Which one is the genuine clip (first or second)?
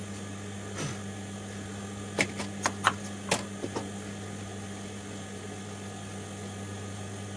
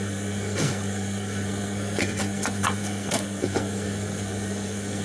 first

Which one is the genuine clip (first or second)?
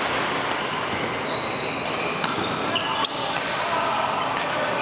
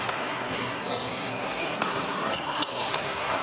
first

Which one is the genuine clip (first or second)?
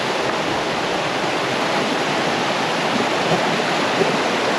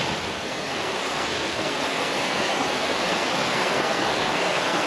first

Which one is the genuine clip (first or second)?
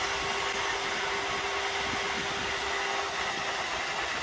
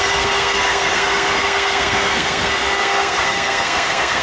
first